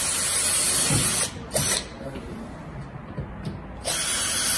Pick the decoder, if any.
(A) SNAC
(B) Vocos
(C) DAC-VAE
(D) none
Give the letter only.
D